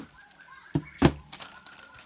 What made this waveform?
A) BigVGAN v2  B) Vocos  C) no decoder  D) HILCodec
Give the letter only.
A